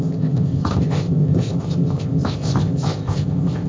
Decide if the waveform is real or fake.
fake